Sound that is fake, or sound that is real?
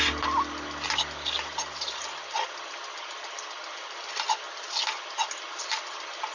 real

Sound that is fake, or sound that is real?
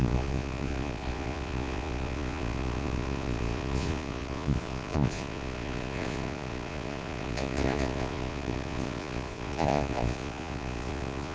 fake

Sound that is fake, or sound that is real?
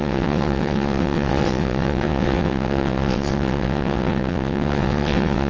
fake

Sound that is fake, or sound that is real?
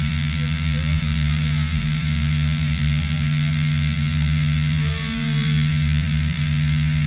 fake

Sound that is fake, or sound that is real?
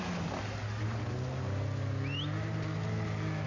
real